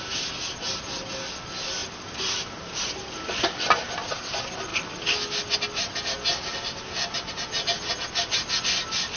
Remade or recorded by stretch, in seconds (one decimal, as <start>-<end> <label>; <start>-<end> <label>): 0.0-1.8 recorded; 1.8-3.6 remade; 3.6-9.2 recorded